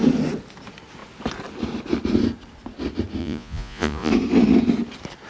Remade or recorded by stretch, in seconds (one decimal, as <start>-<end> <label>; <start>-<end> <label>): 0.0-3.2 recorded; 3.2-4.1 remade; 4.1-5.3 recorded